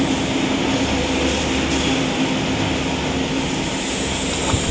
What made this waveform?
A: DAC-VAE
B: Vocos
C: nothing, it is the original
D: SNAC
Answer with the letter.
C